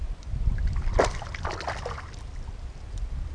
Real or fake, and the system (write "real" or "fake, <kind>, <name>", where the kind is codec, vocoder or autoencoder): real